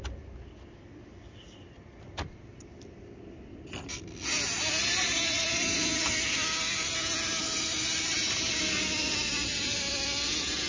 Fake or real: real